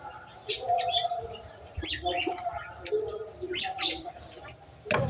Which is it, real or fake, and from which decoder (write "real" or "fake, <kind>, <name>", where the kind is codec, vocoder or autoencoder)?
real